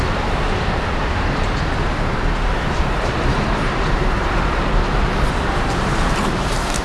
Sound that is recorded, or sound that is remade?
remade